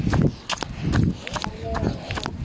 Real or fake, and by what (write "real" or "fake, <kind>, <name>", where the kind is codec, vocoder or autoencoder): real